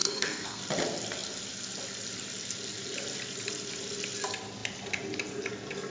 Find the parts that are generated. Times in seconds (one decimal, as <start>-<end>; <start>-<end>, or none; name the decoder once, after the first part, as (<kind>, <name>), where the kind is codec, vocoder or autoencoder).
0.0-0.6 (codec, SNAC)